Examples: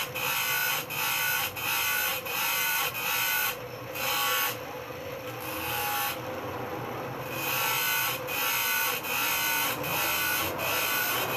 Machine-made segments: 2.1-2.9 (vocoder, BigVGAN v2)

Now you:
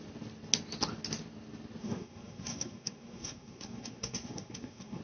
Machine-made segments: 1.8-5.0 (codec, SNAC)

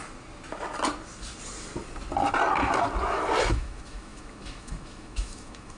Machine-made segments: 3.5-5.8 (autoencoder, DAC-VAE)

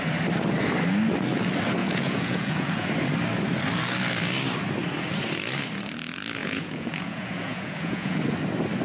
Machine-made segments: 1.8-2.9 (vocoder, Vocos); 6.4-8.2

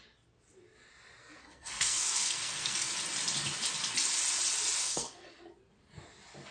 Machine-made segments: 1.2-2.9 (codec, SNAC); 4.8-5.4